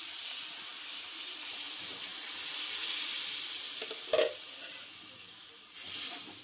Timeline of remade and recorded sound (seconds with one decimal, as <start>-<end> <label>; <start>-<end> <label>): 0.0-0.7 recorded; 0.7-1.5 remade; 1.5-6.4 recorded